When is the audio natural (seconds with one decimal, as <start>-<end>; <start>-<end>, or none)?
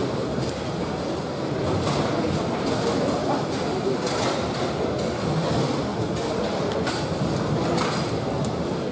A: 0.0-8.9